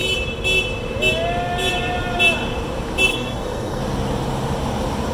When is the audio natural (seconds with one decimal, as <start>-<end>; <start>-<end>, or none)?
0.0-3.1; 3.8-5.1